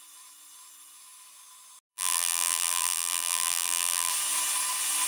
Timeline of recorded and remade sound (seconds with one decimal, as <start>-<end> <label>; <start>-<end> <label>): 0.0-1.9 recorded; 1.9-4.1 remade; 4.1-5.1 recorded